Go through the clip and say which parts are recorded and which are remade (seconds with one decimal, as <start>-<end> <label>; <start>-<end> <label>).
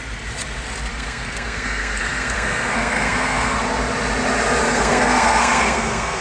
0.0-0.9 recorded; 0.9-3.6 remade; 3.6-4.6 recorded; 4.6-6.2 remade